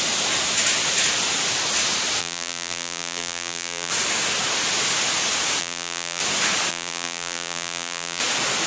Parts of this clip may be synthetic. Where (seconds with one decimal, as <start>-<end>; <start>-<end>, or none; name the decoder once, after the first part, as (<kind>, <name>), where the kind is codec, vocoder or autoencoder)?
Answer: 2.2-3.9 (vocoder, BigVGAN v2); 5.6-6.2; 6.7-8.2